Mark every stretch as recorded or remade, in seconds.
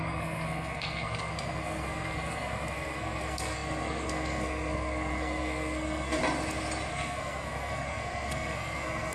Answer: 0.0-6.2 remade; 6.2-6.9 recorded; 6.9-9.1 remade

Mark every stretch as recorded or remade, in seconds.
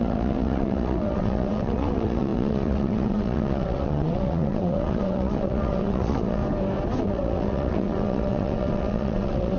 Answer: 0.0-6.4 remade; 6.4-7.0 recorded; 7.0-9.6 remade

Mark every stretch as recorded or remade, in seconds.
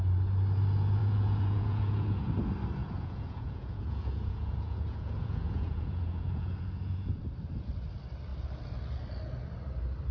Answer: 0.0-1.0 recorded; 1.0-2.3 remade; 2.3-2.8 recorded; 2.8-7.2 remade; 7.2-10.1 recorded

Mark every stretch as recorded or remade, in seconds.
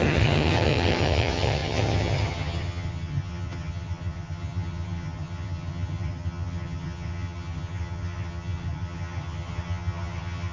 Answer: 0.0-10.5 remade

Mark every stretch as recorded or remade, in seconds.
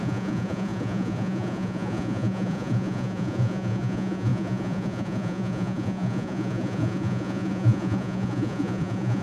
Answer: 0.0-9.2 remade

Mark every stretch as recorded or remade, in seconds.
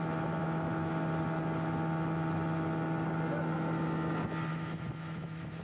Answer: 0.0-0.4 recorded; 0.4-0.9 remade; 0.9-4.5 recorded; 4.5-5.6 remade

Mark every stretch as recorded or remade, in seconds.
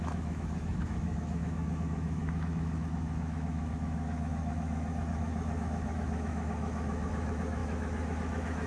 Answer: 0.0-8.7 remade